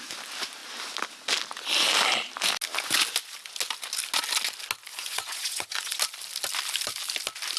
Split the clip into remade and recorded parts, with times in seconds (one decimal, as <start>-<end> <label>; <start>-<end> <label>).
0.0-4.9 recorded; 4.9-6.0 remade; 6.0-7.6 recorded